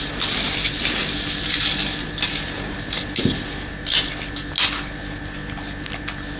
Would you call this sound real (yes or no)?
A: yes